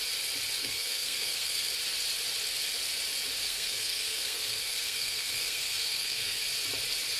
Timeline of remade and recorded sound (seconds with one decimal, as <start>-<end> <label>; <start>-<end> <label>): 0.0-0.6 recorded; 0.6-1.7 remade; 1.7-3.4 recorded; 3.4-6.4 remade; 6.4-7.2 recorded